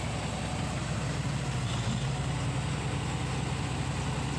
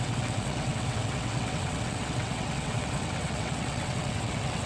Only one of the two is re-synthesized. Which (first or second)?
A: second